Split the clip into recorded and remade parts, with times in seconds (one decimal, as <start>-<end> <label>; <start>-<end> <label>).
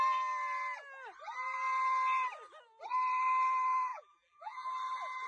0.0-3.9 recorded; 3.9-4.7 remade; 4.7-5.3 recorded